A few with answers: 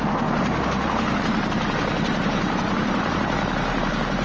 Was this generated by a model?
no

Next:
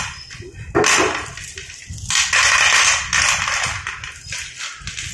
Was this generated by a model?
no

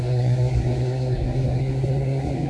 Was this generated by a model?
yes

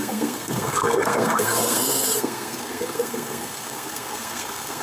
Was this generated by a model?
yes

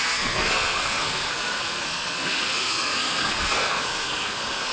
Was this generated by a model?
yes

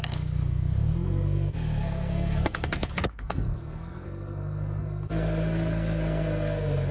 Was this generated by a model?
yes